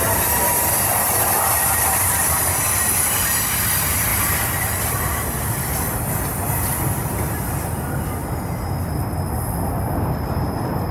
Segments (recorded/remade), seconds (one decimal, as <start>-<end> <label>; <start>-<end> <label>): 0.0-10.9 recorded